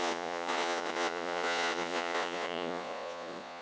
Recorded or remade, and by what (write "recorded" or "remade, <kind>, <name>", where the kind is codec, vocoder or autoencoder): remade, vocoder, Vocos